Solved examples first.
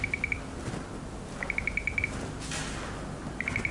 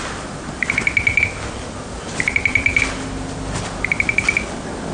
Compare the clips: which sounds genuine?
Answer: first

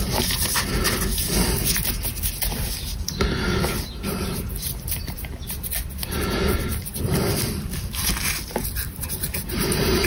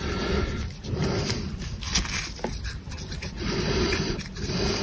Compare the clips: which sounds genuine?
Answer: first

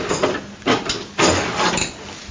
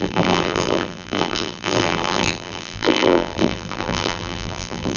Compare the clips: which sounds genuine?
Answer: first